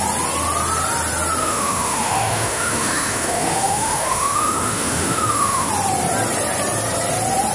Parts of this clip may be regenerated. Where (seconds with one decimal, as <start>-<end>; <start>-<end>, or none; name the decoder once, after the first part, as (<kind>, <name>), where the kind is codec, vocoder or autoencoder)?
1.4-5.7 (autoencoder, DAC-VAE)